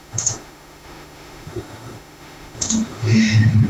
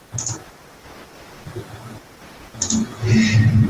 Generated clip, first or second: first